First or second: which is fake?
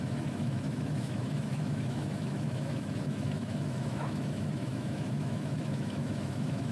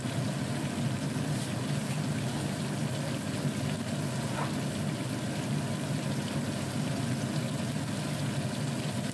first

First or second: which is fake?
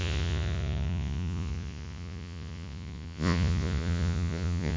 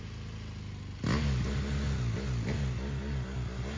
first